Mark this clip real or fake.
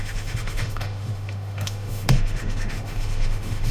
fake